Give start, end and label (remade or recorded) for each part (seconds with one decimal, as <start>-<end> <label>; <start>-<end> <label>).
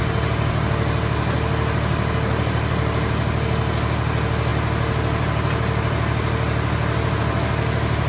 0.0-8.1 recorded